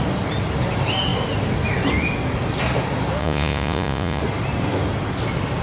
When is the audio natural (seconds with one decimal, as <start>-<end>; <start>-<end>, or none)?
0.0-3.2; 4.2-5.6